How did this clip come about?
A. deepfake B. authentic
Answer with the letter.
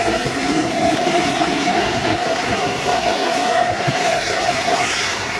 A